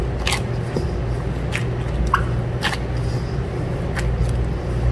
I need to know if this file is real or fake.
real